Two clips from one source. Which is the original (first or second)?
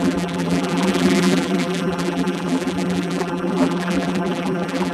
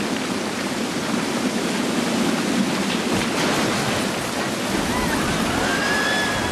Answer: second